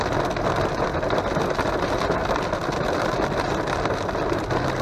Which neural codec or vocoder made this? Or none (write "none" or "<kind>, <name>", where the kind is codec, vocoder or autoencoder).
none